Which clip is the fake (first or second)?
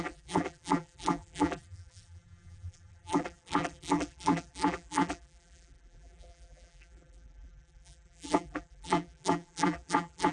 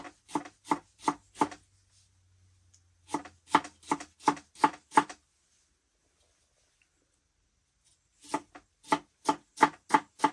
first